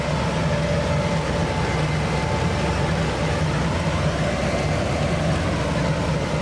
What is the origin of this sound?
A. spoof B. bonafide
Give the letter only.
B